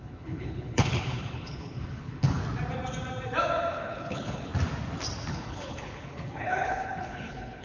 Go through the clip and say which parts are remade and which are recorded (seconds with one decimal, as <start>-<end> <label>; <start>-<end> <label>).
0.0-2.4 remade; 2.4-3.7 recorded; 3.7-4.5 remade; 4.5-5.3 recorded; 5.3-7.6 remade